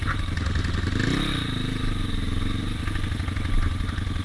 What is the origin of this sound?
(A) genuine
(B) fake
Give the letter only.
A